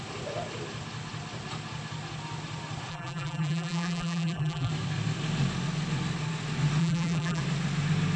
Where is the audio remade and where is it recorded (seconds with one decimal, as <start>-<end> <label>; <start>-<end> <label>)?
0.0-2.9 recorded; 2.9-4.7 remade; 4.7-6.8 recorded; 6.8-7.4 remade; 7.4-8.2 recorded

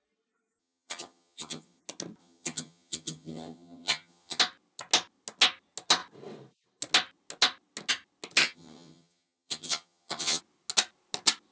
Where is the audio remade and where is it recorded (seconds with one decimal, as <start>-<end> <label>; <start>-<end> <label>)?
0.0-0.6 recorded; 0.6-1.8 remade; 1.8-2.2 recorded; 2.2-4.4 remade; 4.4-8.4 recorded; 8.4-10.4 remade; 10.4-11.5 recorded